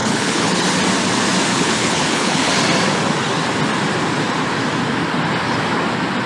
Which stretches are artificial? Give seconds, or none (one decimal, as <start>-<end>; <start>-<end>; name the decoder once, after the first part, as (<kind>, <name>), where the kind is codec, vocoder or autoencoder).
0.0-0.6 (codec, HILCodec); 1.5-2.5